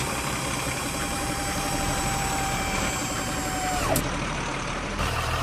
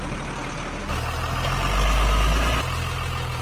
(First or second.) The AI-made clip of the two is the first